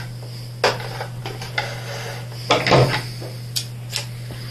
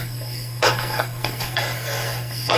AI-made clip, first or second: second